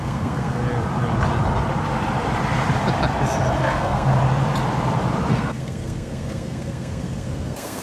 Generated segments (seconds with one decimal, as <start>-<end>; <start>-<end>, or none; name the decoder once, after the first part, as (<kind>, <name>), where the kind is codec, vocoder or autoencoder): 0.0-0.6 (codec, SNAC); 3.6-4.1; 5.3-7.8